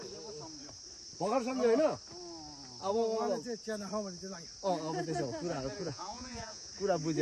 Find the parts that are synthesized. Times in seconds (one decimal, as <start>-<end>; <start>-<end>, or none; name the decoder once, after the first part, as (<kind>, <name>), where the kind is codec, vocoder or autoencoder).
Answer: 5.8-6.7 (vocoder, Vocos)